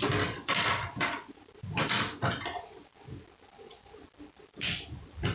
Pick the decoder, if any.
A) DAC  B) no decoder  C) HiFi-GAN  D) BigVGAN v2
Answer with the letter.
B